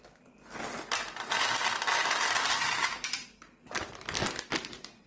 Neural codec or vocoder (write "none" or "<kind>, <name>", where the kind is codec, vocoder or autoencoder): none